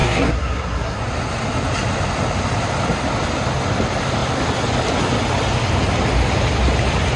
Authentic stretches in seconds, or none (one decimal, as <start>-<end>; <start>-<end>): 1.0-7.2